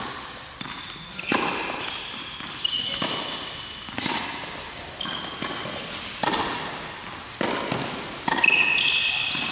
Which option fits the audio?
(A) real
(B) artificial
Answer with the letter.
A